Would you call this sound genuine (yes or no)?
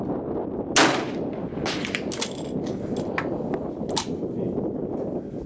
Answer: yes